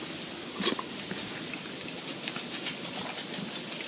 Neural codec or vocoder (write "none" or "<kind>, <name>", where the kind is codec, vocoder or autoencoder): none